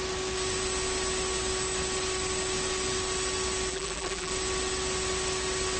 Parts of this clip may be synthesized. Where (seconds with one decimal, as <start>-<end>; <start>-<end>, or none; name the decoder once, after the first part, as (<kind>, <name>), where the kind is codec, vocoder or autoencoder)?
3.7-4.3 (vocoder, BigVGAN v2)